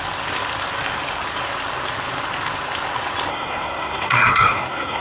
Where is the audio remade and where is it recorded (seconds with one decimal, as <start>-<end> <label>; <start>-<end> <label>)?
0.0-3.3 recorded; 3.3-5.0 remade

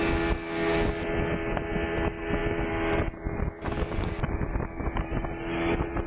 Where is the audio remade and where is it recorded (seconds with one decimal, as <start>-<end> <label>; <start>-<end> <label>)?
0.0-6.1 recorded